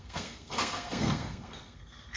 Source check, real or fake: fake